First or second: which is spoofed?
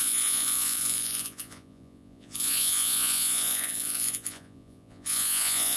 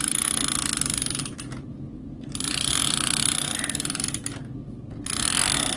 first